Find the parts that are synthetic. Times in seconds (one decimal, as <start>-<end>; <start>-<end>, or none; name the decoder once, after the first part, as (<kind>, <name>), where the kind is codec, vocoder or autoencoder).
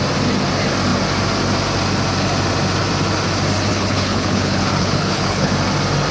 3.7-5.5 (codec, HILCodec)